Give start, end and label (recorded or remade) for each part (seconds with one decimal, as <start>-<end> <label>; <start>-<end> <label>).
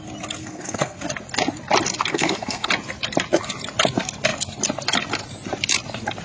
0.0-0.4 recorded; 0.4-1.0 remade; 1.0-2.1 recorded; 2.1-2.7 remade; 2.7-6.2 recorded